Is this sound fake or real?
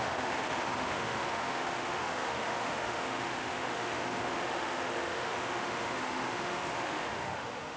fake